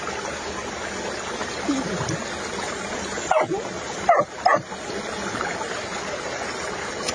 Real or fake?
real